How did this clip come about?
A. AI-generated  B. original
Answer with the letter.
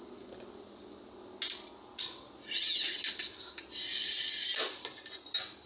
B